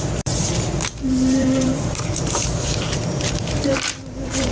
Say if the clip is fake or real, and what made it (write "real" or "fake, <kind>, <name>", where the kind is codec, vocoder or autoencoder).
fake, vocoder, BigVGAN v2